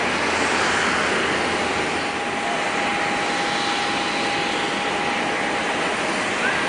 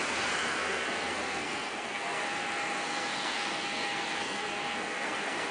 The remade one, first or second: second